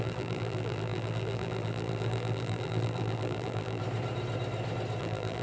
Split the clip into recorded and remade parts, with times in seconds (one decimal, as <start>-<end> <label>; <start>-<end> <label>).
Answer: 0.0-3.8 remade; 3.8-5.0 recorded; 5.0-5.4 remade